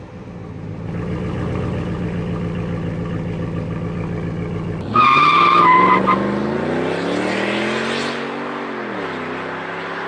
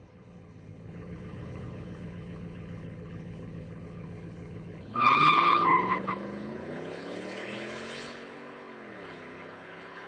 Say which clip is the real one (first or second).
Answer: first